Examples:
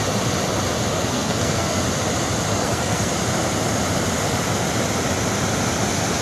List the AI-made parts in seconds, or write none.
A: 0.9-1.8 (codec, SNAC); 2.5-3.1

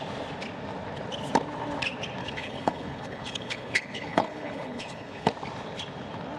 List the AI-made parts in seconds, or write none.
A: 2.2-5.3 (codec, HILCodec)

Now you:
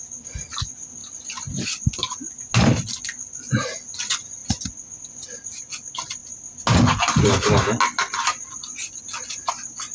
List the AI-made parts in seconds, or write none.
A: none

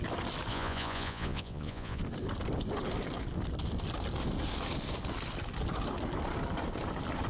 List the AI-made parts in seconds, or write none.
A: 0.5-2.0 (vocoder, Vocos)